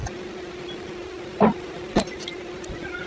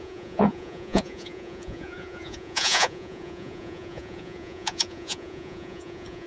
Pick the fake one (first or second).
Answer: second